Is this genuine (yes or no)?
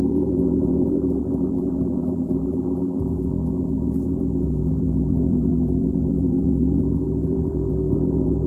no